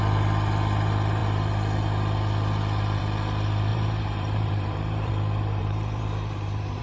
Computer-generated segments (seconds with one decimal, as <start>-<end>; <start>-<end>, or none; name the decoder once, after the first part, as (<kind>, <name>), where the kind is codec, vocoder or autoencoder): 3.7-5.1 (vocoder, BigVGAN v2); 5.6-6.8